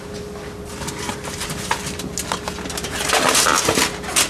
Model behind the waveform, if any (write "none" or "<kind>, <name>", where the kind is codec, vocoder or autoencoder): none